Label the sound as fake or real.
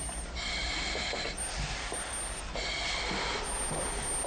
real